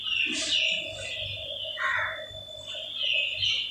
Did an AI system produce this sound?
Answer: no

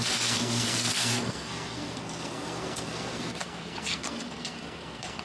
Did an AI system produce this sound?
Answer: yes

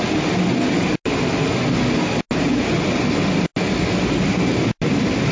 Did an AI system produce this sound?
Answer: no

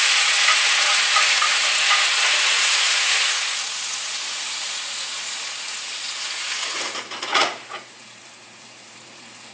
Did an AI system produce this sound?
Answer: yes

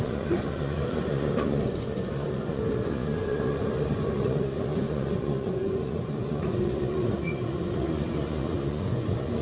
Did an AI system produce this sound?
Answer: yes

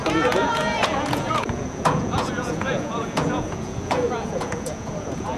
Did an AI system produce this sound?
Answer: yes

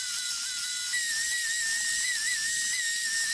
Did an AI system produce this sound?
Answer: no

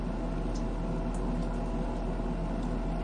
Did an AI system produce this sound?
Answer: no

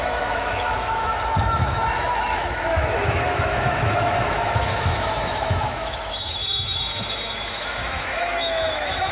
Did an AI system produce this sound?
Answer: yes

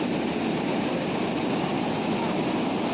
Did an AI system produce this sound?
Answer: no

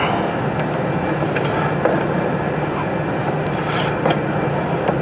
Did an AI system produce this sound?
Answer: no